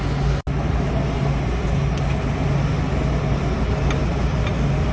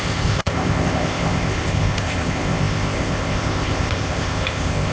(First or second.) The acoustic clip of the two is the first